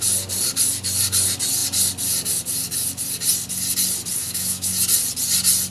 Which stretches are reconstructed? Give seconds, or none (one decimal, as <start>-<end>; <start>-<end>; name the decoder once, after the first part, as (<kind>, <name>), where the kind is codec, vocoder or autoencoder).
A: 4.2-4.7 (autoencoder, DAC-VAE)